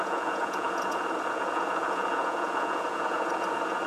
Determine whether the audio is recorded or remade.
remade